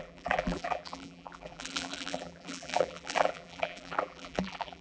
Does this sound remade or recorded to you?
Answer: remade